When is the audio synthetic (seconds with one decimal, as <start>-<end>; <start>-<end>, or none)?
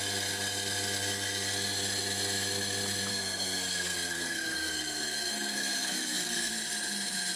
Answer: 3.1-6.5